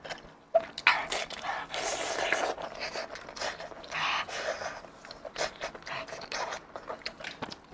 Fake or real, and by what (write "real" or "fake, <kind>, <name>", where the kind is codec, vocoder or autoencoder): real